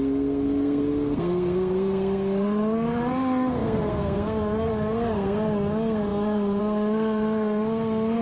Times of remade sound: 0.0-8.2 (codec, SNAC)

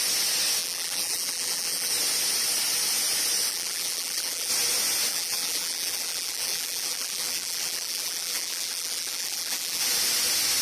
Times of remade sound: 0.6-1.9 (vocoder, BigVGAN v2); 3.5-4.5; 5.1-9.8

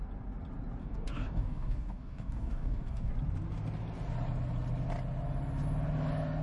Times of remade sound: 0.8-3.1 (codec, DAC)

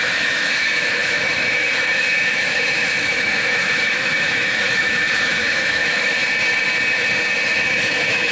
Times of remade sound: 0.0-6.2 (autoencoder, DAC-VAE); 7.7-8.3

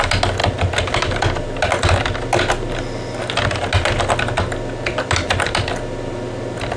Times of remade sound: none

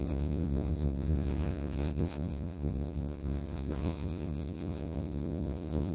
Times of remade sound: 0.0-5.9 (vocoder, Vocos)

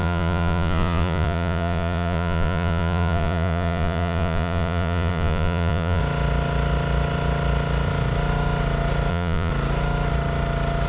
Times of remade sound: 0.0-6.0 (vocoder, Vocos); 9.1-9.5